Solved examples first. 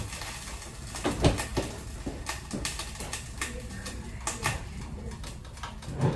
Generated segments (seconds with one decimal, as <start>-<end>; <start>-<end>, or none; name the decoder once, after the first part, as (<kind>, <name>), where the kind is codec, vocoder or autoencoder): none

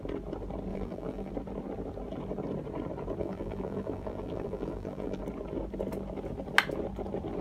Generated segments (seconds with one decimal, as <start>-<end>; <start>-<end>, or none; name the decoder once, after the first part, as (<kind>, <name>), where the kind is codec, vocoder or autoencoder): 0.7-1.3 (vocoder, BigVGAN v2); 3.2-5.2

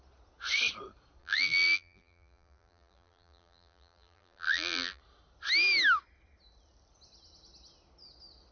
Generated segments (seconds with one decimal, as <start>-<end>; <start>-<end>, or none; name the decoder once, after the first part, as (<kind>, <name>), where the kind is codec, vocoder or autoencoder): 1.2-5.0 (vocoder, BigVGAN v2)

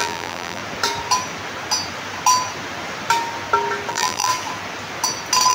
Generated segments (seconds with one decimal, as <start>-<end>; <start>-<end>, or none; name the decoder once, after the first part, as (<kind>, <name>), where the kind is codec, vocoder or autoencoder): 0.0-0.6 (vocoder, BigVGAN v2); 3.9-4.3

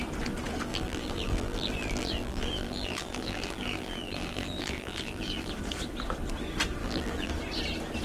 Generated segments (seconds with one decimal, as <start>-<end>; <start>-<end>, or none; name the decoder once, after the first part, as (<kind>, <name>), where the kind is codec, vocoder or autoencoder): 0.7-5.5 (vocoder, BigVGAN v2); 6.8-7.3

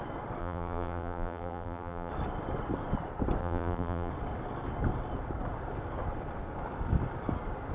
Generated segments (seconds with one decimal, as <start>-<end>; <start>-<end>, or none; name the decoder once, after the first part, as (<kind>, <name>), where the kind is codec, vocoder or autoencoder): 0.4-2.1 (vocoder, BigVGAN v2); 3.4-4.1

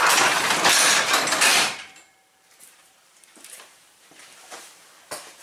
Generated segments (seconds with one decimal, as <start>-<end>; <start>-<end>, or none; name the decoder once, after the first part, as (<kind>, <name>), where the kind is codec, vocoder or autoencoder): 1.5-4.7 (vocoder, BigVGAN v2)